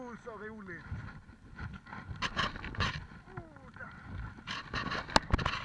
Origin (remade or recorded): recorded